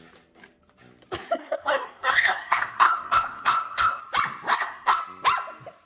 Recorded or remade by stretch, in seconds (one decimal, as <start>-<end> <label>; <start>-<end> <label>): 0.0-1.4 recorded; 1.4-4.0 remade; 4.0-4.5 recorded; 4.5-5.0 remade; 5.0-5.9 recorded